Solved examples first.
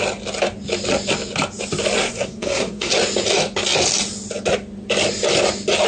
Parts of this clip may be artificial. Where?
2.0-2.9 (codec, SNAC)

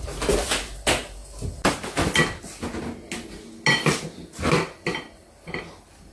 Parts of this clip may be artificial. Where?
none

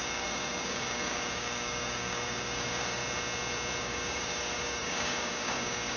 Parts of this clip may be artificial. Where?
0.0-3.0 (codec, DAC); 3.8-6.0